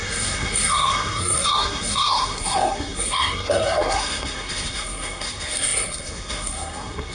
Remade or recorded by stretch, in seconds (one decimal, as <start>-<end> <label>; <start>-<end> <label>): 0.0-7.1 remade